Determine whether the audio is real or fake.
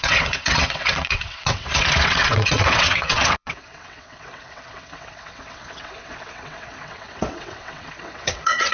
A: fake